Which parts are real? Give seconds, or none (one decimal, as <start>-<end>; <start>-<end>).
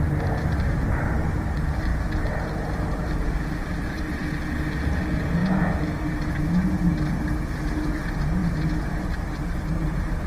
4.2-4.8; 5.4-7.5